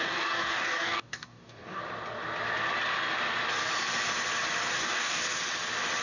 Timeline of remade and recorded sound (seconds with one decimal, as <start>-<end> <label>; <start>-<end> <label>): 0.0-1.8 remade; 1.8-4.7 recorded; 4.7-5.2 remade; 5.2-6.0 recorded